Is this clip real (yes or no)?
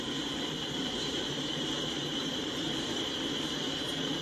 no